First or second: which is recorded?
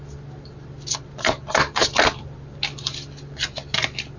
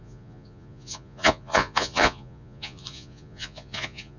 first